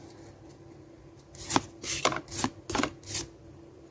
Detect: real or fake real